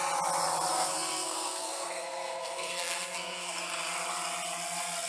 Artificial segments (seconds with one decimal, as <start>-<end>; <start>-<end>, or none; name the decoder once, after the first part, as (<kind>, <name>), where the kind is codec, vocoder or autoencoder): 0.7-3.8 (codec, SNAC)